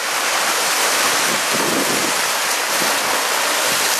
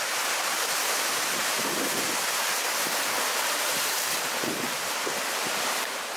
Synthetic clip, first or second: second